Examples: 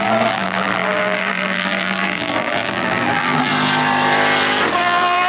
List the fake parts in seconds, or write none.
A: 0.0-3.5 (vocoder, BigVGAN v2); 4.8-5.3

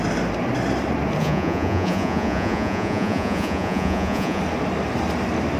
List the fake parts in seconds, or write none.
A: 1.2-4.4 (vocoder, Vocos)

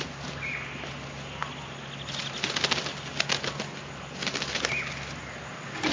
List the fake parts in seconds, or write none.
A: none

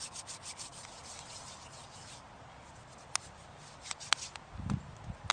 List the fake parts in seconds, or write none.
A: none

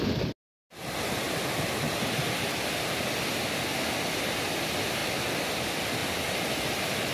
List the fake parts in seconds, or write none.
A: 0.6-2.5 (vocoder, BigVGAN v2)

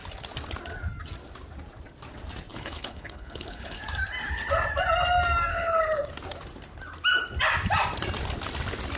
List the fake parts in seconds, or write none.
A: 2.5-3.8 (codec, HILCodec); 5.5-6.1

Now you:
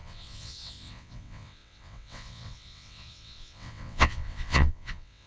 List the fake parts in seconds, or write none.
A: 0.0-5.3 (vocoder, WaveNeXt)